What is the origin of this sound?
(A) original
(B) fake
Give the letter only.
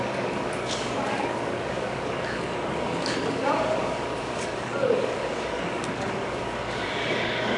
B